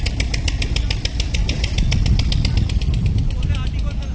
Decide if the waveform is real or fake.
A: real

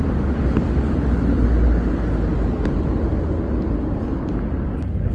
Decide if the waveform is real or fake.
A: real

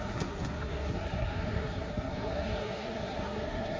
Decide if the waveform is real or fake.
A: fake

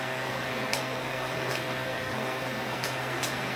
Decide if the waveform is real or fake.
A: fake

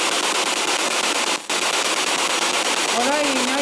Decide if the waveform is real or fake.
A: real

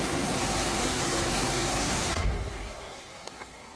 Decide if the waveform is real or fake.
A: fake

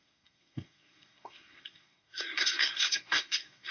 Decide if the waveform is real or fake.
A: fake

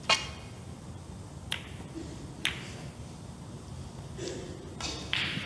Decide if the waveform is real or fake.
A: real